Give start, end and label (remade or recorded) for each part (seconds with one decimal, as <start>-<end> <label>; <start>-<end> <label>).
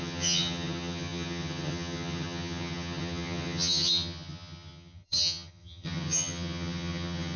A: 0.0-7.4 remade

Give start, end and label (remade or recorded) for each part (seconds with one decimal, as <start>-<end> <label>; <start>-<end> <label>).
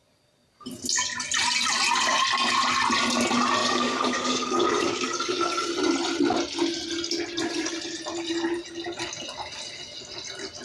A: 0.0-3.6 recorded; 3.6-5.6 remade; 5.6-10.6 recorded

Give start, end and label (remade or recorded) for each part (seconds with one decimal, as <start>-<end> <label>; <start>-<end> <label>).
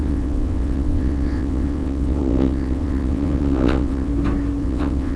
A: 0.0-4.1 remade; 4.1-4.6 recorded; 4.6-5.2 remade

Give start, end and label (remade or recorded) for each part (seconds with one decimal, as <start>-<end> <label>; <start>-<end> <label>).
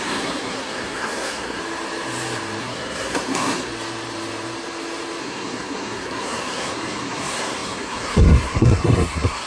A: 0.0-1.6 remade; 1.6-2.6 recorded; 2.6-3.7 remade; 3.7-5.2 recorded; 5.2-9.5 remade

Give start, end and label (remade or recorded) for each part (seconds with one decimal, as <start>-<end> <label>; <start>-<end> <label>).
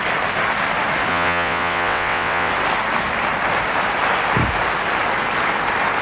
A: 0.0-1.1 recorded; 1.1-2.5 remade; 2.5-6.0 recorded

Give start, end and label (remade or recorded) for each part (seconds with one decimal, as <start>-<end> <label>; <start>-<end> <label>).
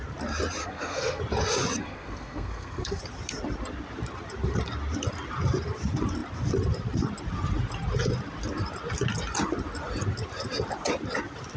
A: 0.0-0.6 recorded; 0.6-1.2 remade; 1.2-1.8 recorded; 1.8-3.0 remade; 3.0-11.6 recorded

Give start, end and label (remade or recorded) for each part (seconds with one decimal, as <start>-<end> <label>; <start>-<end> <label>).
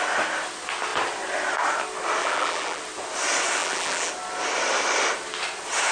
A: 0.0-2.2 recorded; 2.2-2.8 remade; 2.8-3.6 recorded; 3.6-4.1 remade; 4.1-5.9 recorded